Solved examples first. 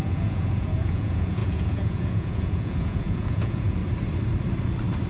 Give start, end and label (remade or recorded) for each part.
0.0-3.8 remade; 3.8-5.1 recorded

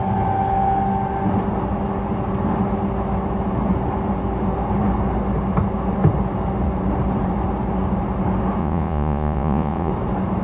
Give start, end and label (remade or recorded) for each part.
0.0-8.6 recorded; 8.6-9.9 remade; 9.9-10.4 recorded

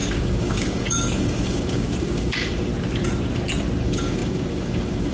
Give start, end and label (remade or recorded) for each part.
0.0-2.7 remade; 2.7-3.8 recorded; 3.8-5.1 remade

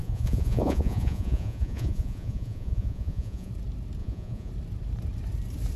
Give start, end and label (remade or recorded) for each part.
0.0-3.5 remade; 3.5-4.0 recorded; 4.0-4.5 remade; 4.5-5.8 recorded

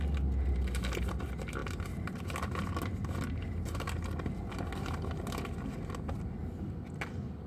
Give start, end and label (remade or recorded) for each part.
0.0-7.5 recorded

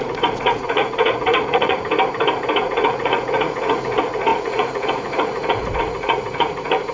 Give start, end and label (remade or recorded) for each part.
0.0-1.9 remade; 1.9-2.6 recorded; 2.6-6.9 remade